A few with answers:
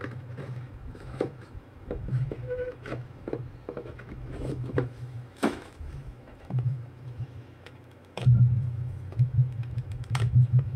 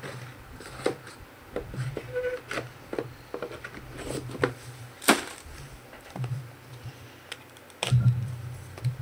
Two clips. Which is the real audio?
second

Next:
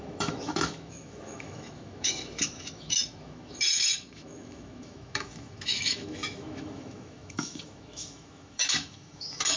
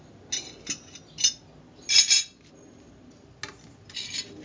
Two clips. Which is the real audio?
second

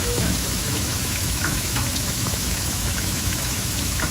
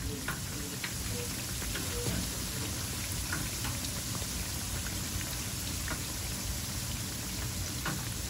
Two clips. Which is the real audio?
second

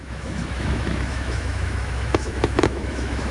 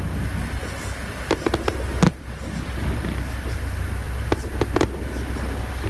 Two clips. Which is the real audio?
second